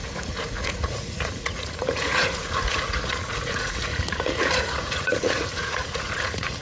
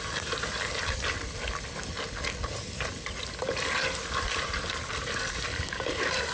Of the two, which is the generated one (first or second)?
first